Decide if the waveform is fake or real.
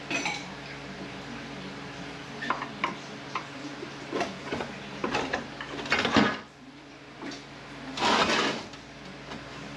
real